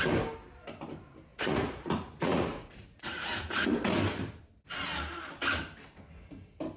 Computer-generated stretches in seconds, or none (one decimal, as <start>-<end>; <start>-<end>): 1.3-3.7